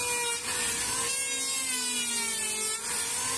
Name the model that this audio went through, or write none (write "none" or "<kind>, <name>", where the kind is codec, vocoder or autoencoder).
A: none